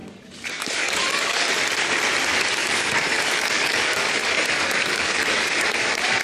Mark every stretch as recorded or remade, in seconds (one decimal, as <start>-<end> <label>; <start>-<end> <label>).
0.0-1.6 remade; 1.6-2.6 recorded; 2.6-6.2 remade